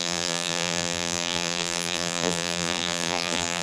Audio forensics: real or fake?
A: fake